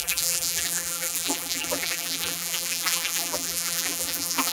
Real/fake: fake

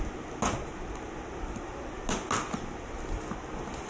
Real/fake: real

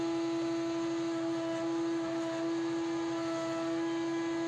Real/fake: real